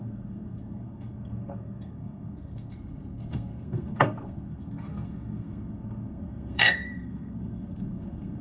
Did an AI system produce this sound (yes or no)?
yes